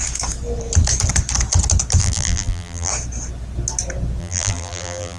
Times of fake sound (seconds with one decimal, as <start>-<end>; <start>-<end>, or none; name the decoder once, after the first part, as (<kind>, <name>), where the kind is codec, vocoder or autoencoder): 2.0-2.9 (vocoder, BigVGAN v2); 4.2-5.2